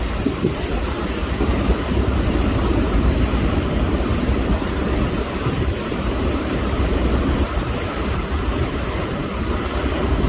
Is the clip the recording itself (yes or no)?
no